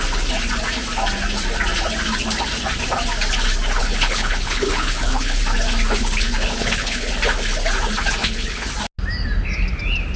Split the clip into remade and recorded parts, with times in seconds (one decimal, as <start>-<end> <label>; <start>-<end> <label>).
0.0-3.8 recorded; 3.8-5.4 remade; 5.4-6.0 recorded; 6.0-7.1 remade; 7.1-8.2 recorded; 8.2-8.7 remade; 8.7-10.2 recorded